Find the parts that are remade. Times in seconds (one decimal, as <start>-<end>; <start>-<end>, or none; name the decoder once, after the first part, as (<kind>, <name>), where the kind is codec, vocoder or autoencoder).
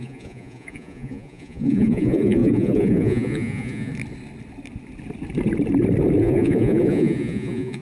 0.0-3.9 (vocoder, Vocos); 6.2-7.8